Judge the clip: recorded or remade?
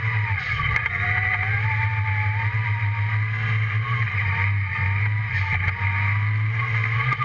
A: recorded